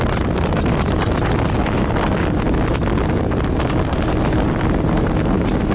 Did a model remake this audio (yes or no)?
no